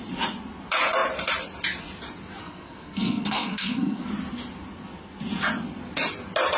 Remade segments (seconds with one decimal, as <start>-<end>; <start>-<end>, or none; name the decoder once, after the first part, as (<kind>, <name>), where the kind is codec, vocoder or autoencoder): 2.4-4.1 (codec, SNAC)